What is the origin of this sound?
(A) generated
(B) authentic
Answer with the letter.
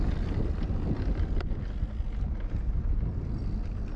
B